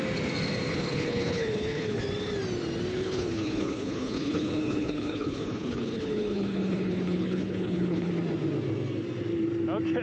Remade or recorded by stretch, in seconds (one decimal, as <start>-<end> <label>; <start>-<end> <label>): 0.0-0.7 recorded; 0.7-2.0 remade; 2.0-2.9 recorded; 2.9-8.1 remade; 8.1-10.0 recorded